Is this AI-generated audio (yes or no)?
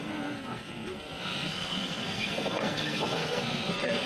yes